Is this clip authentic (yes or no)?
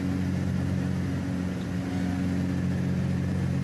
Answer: yes